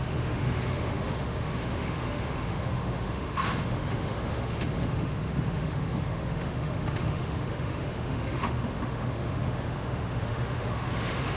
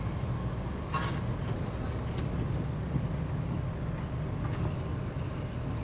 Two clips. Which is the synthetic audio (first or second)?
first